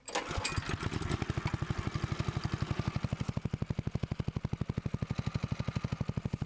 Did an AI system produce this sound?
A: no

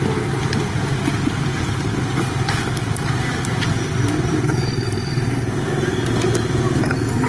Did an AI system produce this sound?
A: no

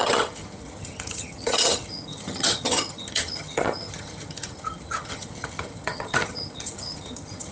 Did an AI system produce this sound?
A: yes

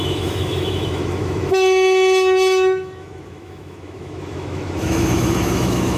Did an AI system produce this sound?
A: yes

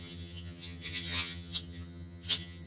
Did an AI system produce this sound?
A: yes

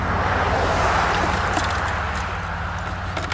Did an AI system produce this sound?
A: no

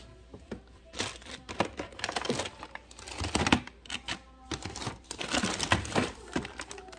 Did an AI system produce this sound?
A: no